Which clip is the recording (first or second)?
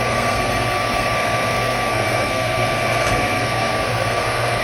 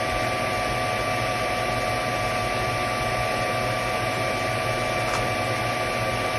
second